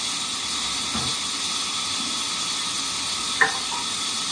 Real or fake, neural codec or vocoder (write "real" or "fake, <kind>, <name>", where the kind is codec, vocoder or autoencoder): real